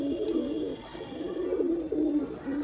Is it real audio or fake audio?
real